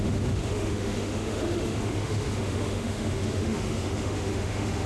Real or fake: fake